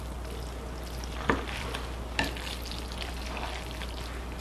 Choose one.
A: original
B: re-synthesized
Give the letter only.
A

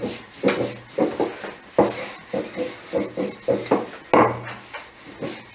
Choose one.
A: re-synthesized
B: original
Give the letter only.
B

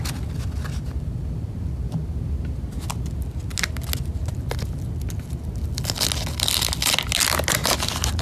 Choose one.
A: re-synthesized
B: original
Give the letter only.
B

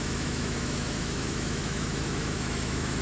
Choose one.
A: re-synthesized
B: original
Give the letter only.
A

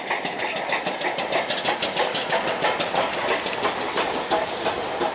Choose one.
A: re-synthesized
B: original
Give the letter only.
B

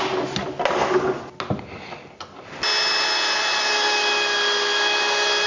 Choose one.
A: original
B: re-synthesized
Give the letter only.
A